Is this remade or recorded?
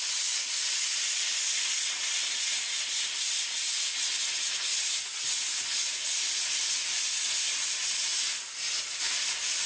recorded